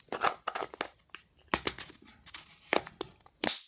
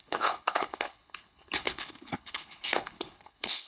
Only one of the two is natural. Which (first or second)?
first